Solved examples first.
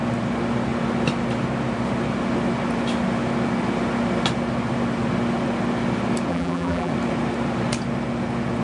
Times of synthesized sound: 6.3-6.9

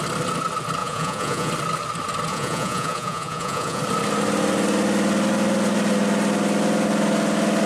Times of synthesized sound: 0.8-1.5; 2.3-3.8

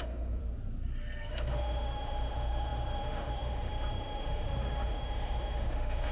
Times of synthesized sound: 0.0-0.4; 1.3-6.1

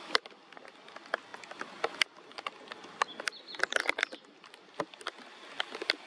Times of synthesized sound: none

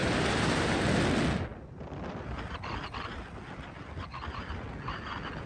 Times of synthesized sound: 0.0-0.9

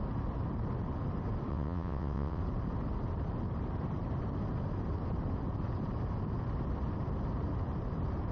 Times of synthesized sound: 1.5-2.4

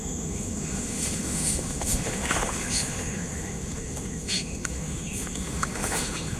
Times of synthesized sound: 0.0-6.4